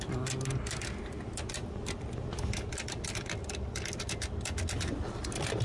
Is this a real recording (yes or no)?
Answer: yes